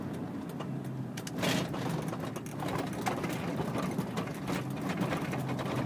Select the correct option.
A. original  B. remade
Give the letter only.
A